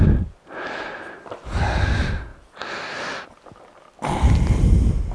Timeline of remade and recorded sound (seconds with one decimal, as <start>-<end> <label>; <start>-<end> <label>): 0.0-5.1 recorded